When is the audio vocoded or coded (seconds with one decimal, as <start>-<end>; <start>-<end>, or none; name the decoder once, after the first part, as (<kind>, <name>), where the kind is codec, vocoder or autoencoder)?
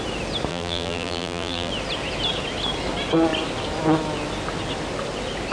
0.5-1.7 (vocoder, BigVGAN v2)